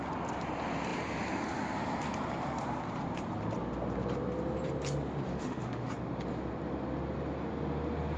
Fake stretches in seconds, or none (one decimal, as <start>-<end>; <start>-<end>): 5.3-5.9